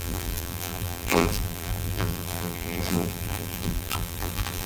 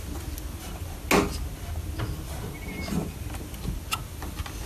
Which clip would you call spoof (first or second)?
first